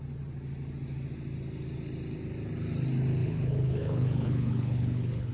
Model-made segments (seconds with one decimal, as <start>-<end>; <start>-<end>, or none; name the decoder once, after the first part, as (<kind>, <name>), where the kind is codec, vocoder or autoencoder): 3.2-5.3 (codec, HILCodec)